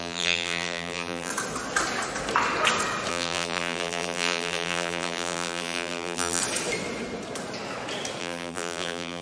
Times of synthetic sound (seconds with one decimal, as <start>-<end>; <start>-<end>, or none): 0.0-1.3; 3.1-6.4; 8.2-9.2